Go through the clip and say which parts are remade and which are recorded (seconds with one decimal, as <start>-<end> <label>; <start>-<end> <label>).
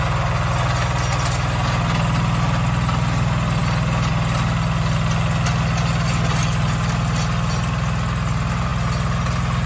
0.0-9.7 recorded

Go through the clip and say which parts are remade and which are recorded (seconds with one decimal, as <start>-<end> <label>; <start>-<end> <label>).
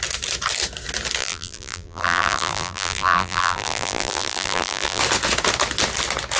0.0-1.2 recorded; 1.2-5.0 remade; 5.0-6.4 recorded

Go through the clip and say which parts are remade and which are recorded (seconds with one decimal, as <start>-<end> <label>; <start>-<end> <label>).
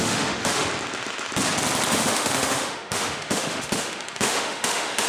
0.0-0.6 remade; 0.6-1.9 recorded; 1.9-5.1 remade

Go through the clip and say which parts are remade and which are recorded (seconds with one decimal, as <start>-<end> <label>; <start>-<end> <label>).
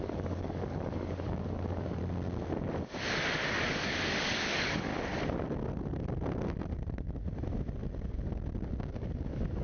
0.0-2.0 remade; 2.0-3.5 recorded; 3.5-4.9 remade; 4.9-8.8 recorded; 8.8-9.6 remade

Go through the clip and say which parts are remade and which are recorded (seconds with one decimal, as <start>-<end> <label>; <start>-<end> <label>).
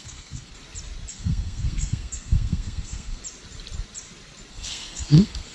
0.0-0.5 remade; 0.5-1.1 recorded; 1.1-3.2 remade; 3.2-4.5 recorded; 4.5-5.5 remade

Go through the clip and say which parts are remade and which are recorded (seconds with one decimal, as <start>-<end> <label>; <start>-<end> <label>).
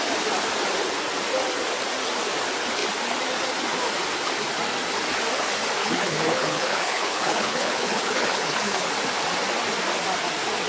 0.0-5.8 recorded; 5.8-8.9 remade; 8.9-10.7 recorded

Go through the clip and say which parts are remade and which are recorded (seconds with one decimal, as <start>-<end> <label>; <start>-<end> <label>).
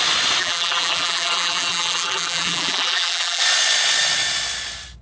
0.0-0.4 recorded; 0.4-3.4 remade; 3.4-5.0 recorded